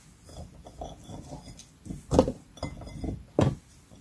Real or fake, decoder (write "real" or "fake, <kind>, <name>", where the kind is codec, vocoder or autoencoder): real